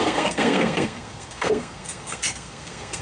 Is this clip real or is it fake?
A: fake